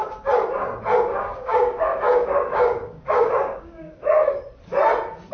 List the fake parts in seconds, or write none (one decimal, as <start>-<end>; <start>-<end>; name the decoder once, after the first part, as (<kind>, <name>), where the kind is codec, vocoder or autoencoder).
1.1-4.3 (codec, DAC)